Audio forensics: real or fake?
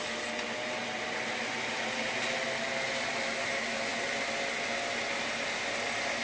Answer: real